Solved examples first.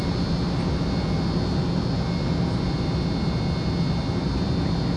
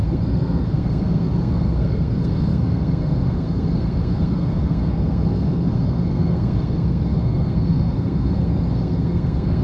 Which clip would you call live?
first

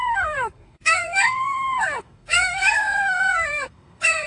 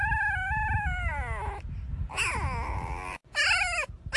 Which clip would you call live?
second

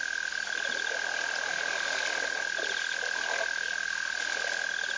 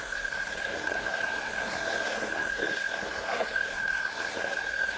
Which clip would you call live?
first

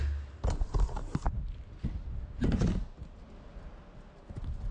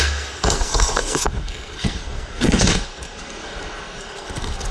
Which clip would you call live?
first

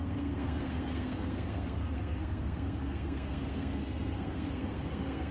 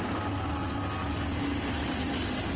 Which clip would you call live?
second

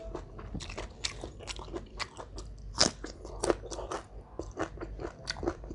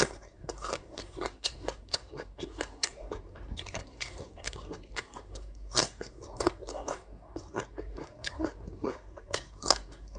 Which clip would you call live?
first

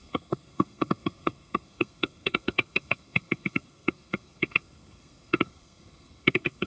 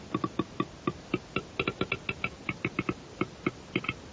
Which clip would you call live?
second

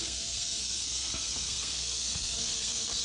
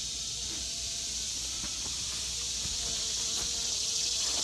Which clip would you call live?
second